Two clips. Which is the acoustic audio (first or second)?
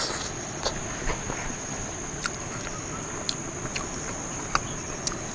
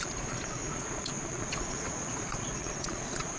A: first